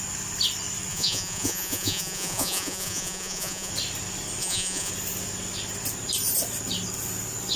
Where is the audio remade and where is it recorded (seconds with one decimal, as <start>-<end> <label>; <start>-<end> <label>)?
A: 0.0-0.9 recorded; 0.9-3.7 remade; 3.7-4.4 recorded; 4.4-4.9 remade; 4.9-7.6 recorded